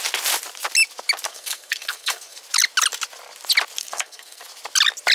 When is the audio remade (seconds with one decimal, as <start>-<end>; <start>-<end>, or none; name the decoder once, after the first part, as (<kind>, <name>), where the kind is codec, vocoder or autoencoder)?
1.3-2.4 (codec, SNAC); 3.8-4.4